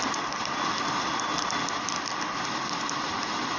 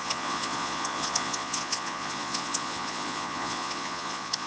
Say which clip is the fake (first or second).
second